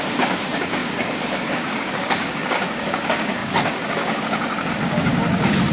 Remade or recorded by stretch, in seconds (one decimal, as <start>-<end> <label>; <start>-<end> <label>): 0.0-5.7 remade